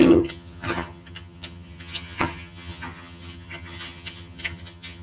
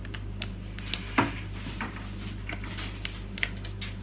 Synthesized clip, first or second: first